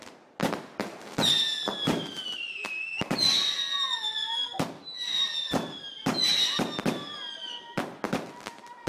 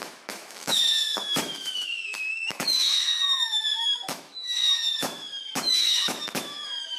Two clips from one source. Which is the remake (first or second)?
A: second